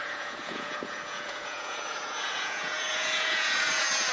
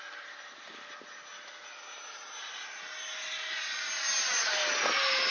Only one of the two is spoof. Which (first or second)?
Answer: first